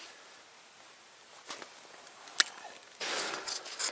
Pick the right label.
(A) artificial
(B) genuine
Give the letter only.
B